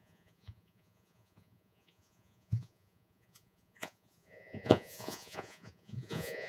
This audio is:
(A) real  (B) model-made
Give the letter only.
B